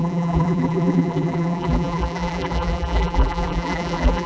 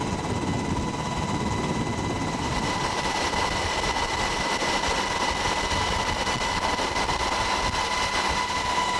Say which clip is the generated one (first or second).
first